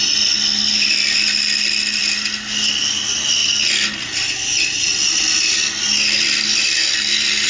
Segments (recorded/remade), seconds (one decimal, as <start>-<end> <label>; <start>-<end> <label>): 0.0-7.5 recorded